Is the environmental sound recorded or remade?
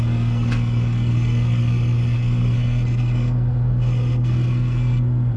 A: remade